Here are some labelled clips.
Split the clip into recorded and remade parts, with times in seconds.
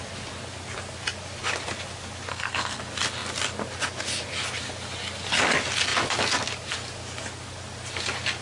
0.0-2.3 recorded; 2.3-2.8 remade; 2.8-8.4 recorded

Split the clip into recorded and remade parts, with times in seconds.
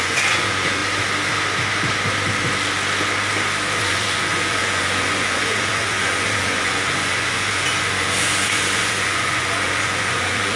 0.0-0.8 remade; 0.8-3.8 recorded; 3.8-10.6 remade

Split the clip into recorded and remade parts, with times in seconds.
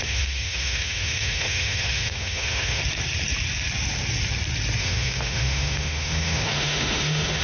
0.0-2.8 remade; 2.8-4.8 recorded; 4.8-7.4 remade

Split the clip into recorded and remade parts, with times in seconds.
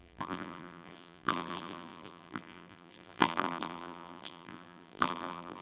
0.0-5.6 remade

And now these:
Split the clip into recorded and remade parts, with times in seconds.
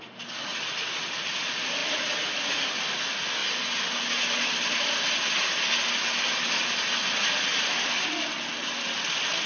0.0-9.5 recorded